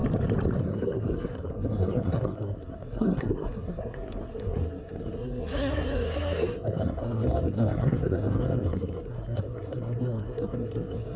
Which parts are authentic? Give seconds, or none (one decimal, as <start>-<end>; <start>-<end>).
0.0-0.6